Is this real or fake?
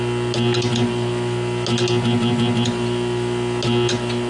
real